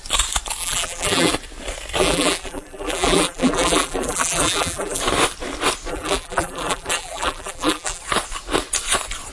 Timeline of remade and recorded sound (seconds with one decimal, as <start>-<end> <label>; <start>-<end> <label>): 0.0-0.6 recorded; 0.6-1.3 remade; 1.3-2.0 recorded; 2.0-5.0 remade; 5.0-5.9 recorded; 5.9-8.0 remade; 8.0-9.3 recorded

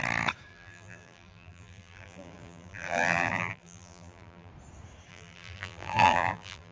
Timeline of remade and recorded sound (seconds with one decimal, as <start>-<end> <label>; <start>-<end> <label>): 0.0-0.5 recorded; 0.5-4.5 remade; 4.5-5.1 recorded; 5.1-6.7 remade

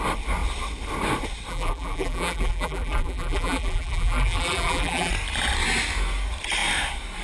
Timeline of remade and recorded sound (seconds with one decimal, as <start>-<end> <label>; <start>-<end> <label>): 0.0-1.5 recorded; 1.5-5.1 remade; 5.1-7.2 recorded

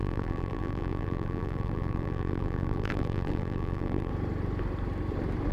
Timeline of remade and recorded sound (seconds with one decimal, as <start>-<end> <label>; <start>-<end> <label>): 0.0-4.1 remade; 4.1-5.5 recorded

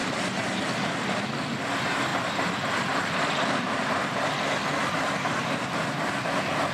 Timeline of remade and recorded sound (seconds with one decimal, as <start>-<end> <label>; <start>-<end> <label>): 0.0-2.1 recorded; 2.1-5.4 remade; 5.4-6.7 recorded

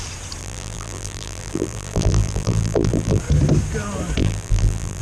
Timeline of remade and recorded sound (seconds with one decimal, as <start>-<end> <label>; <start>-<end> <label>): 0.0-0.4 recorded; 0.4-3.2 remade; 3.2-4.2 recorded; 4.2-5.0 remade